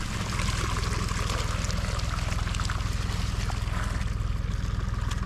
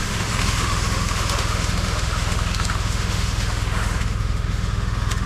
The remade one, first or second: second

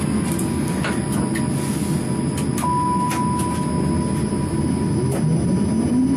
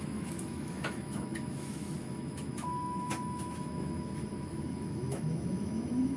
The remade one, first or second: second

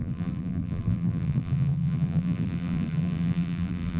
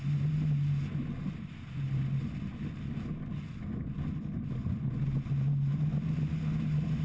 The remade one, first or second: first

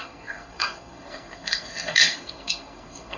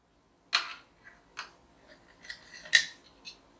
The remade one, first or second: first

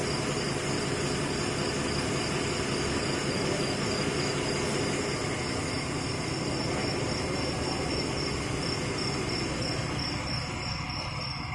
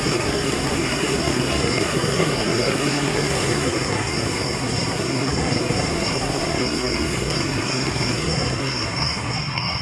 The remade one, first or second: second